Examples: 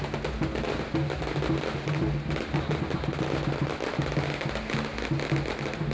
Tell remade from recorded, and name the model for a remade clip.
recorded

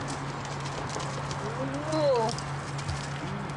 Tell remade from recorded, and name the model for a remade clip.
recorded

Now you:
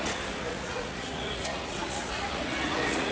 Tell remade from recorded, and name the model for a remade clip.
remade, vocoder, Vocos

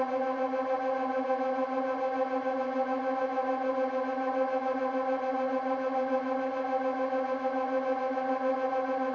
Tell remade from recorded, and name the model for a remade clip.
recorded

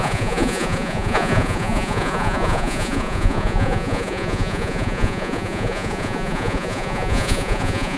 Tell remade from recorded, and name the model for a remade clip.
remade, vocoder, Vocos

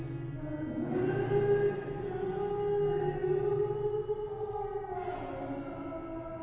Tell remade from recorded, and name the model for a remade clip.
recorded